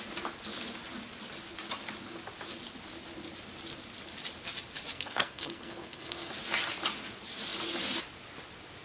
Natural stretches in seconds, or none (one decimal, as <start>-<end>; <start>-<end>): 0.0-4.9; 6.3-8.8